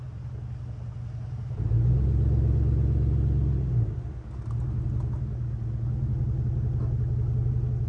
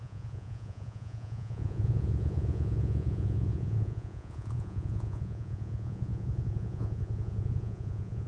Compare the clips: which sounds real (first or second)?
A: first